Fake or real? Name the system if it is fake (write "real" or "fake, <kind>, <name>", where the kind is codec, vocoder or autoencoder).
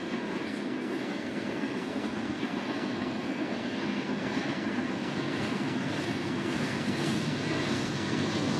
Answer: fake, codec, SNAC